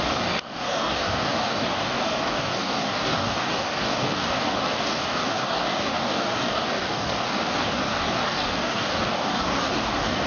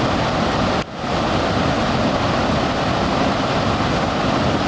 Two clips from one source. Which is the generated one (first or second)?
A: first